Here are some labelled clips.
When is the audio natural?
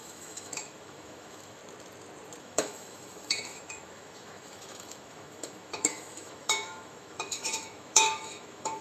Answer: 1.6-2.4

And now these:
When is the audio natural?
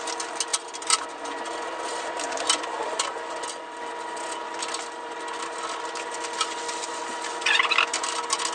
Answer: 0.0-8.5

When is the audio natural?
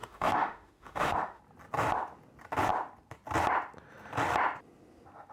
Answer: 1.4-5.3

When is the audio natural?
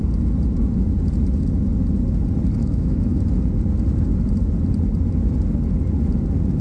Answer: 0.0-2.6; 3.2-6.6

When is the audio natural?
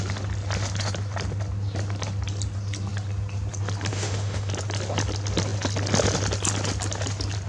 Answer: 0.0-3.9; 4.5-7.5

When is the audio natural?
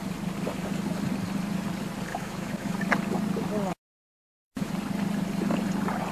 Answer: 0.0-2.1; 2.8-4.1; 4.7-6.1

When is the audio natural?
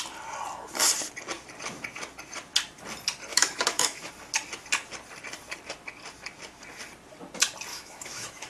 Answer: 0.0-3.3; 4.1-7.7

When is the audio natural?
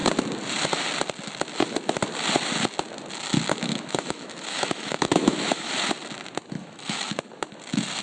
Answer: 0.0-3.3; 5.7-6.6; 7.1-8.0